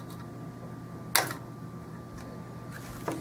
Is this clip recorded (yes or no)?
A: yes